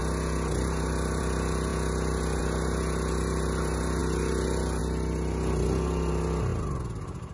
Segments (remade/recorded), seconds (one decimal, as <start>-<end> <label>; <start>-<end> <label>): 0.0-7.3 recorded